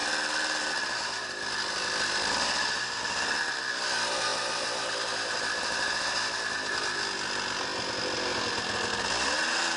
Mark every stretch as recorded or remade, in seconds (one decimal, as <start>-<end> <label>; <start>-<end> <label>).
0.0-9.8 recorded